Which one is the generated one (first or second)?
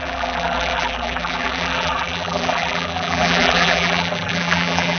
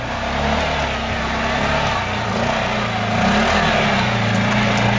first